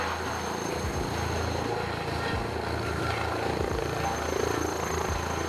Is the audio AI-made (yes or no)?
no